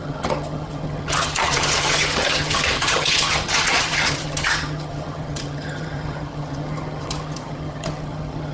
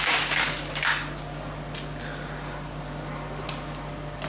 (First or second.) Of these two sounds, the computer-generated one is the first